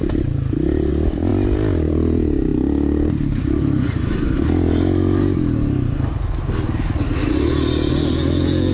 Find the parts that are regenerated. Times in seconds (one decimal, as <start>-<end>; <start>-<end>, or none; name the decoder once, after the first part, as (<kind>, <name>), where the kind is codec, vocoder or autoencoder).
none